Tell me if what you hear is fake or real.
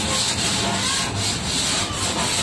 real